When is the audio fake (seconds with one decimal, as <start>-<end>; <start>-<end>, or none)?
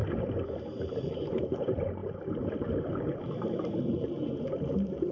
0.8-2.0; 3.1-5.1